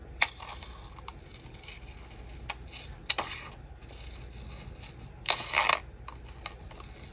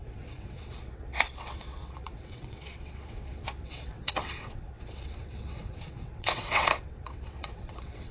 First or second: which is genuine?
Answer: first